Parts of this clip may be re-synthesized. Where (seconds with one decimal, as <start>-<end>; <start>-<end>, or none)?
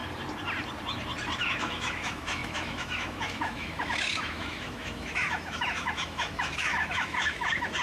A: 1.4-7.8